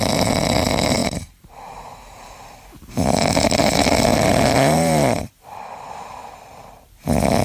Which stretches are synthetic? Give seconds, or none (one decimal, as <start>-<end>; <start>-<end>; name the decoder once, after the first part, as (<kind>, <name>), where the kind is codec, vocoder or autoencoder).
1.0-2.7 (vocoder, BigVGAN v2); 4.1-5.3